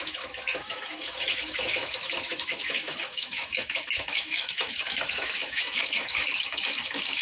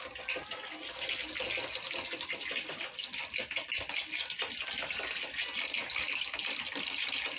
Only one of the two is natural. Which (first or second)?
second